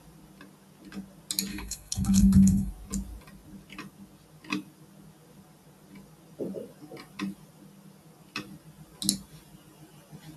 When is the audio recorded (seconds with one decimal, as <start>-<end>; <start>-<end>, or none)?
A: 0.0-1.5; 2.7-10.4